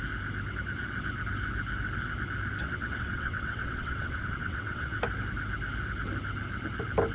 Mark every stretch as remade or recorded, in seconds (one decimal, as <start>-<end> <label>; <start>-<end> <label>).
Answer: 0.0-2.6 recorded; 2.6-5.0 remade; 5.0-7.1 recorded